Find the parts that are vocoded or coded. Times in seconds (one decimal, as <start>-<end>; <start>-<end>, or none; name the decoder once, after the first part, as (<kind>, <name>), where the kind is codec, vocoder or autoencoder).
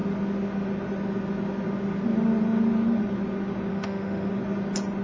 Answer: 3.7-4.3 (autoencoder, DAC-VAE)